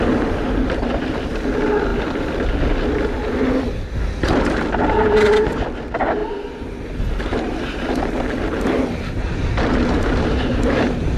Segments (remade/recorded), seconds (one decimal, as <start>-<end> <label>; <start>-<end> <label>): 0.0-1.9 recorded; 1.9-2.4 remade; 2.4-6.2 recorded; 6.2-7.0 remade; 7.0-11.2 recorded